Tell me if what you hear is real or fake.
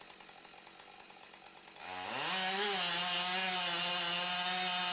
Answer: real